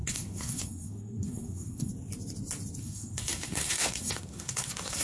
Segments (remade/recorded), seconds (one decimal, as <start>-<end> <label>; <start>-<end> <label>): 0.0-1.9 remade; 1.9-2.8 recorded; 2.8-5.0 remade